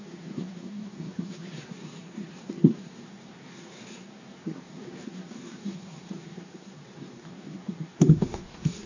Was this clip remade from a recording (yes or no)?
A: yes